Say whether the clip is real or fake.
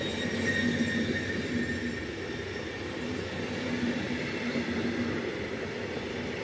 real